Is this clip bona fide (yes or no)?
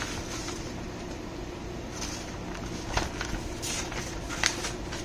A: yes